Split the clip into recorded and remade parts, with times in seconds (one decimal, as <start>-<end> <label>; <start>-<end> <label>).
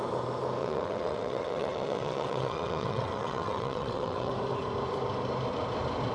0.0-0.6 recorded; 0.6-4.3 remade; 4.3-6.1 recorded